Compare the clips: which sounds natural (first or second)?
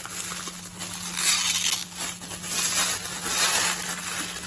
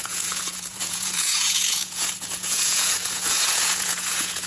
first